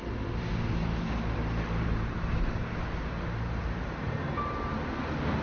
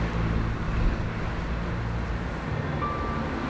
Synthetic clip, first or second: first